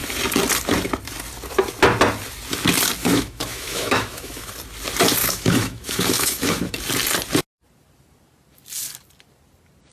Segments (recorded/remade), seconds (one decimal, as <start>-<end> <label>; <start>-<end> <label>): 0.0-3.0 recorded; 3.0-4.5 remade; 4.5-5.2 recorded; 5.2-6.8 remade; 6.8-9.9 recorded